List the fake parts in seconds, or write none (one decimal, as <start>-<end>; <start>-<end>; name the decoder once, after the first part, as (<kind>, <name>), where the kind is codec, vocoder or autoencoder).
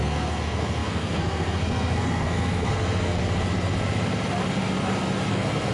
0.0-3.2 (codec, SNAC); 5.3-5.7